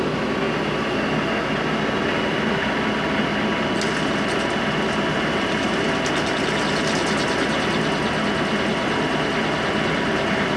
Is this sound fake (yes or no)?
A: no